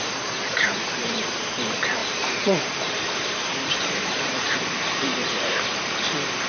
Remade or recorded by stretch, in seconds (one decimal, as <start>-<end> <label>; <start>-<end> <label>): 0.0-6.5 remade